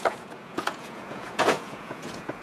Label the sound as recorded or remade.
remade